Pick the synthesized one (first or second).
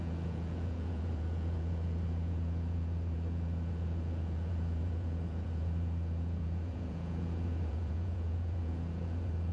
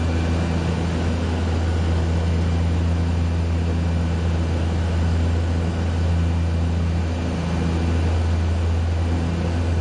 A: first